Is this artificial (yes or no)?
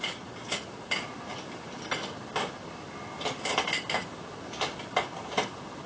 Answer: no